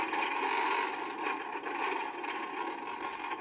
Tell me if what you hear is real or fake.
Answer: fake